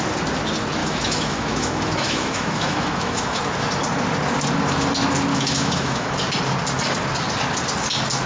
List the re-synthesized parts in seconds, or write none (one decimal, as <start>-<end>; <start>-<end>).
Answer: 0.8-3.4; 5.3-6.1